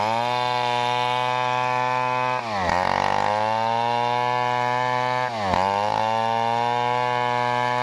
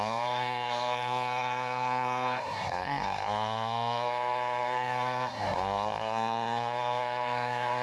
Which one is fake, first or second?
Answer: second